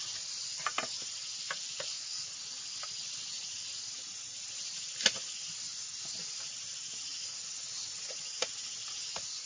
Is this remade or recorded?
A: recorded